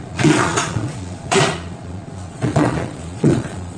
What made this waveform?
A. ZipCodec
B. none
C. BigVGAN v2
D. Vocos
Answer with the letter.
D